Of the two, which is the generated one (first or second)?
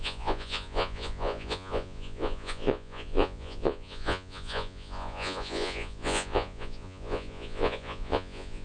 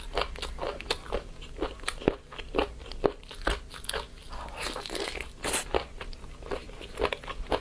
first